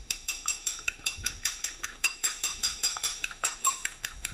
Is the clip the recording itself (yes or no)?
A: no